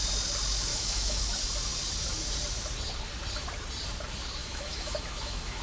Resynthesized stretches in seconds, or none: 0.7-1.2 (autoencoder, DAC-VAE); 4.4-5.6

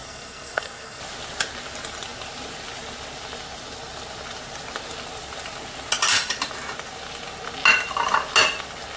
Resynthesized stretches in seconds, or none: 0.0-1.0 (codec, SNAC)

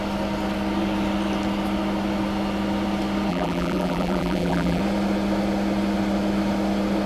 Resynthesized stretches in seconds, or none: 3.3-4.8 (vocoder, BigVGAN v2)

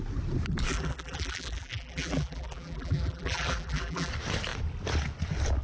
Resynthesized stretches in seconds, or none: 0.7-4.1 (vocoder, BigVGAN v2)

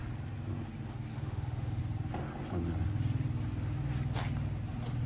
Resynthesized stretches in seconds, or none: 1.1-1.8 (autoencoder, DAC-VAE)

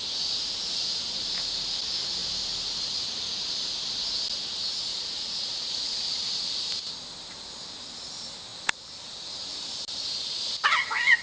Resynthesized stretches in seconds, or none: 4.9-6.2 (vocoder, Vocos)